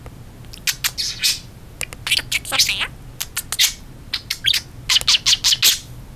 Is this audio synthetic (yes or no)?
no